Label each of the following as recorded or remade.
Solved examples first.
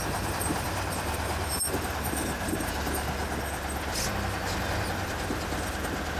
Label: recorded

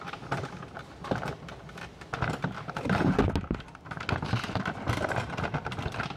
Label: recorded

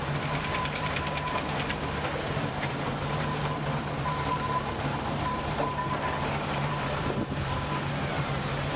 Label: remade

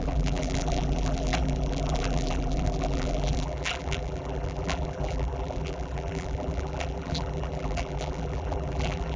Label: remade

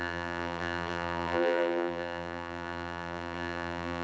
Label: remade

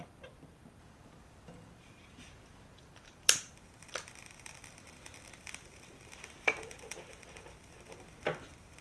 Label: remade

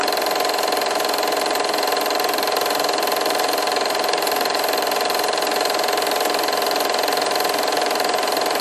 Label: remade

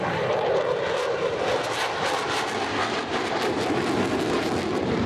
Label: remade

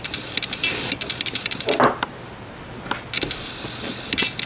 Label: recorded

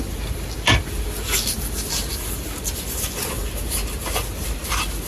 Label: remade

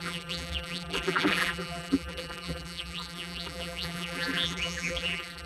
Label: remade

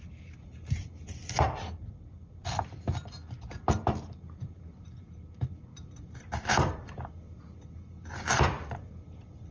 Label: remade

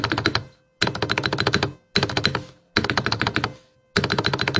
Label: recorded